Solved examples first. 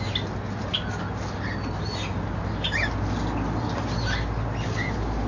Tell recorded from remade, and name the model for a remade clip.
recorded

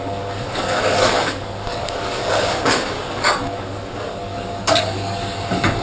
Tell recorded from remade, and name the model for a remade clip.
remade, codec, DAC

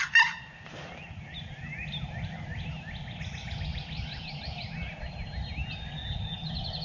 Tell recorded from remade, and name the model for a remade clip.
recorded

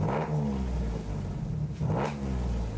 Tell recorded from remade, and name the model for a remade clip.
recorded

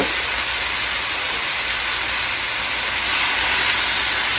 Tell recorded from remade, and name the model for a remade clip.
recorded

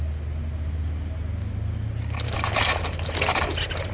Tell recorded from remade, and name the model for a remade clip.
recorded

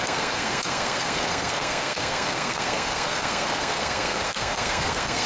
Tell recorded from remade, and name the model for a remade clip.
remade, codec, SNAC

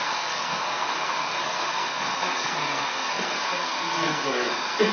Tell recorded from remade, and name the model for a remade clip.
remade, codec, SNAC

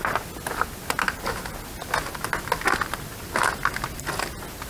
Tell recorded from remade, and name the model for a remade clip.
recorded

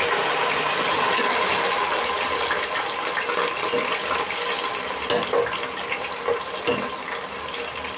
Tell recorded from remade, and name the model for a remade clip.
recorded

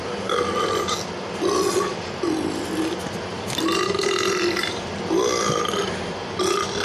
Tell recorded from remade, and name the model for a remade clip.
recorded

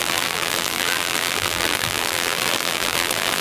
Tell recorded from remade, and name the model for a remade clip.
remade, vocoder, BigVGAN v2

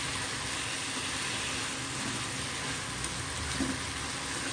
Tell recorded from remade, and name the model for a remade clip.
recorded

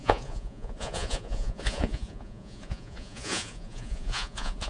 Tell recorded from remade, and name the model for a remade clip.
remade, vocoder, Vocos